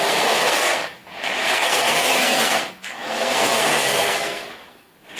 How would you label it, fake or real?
fake